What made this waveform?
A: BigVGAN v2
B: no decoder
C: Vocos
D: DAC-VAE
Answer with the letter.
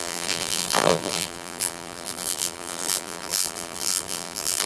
A